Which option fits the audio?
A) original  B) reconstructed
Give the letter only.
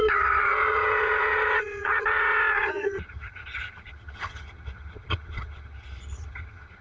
B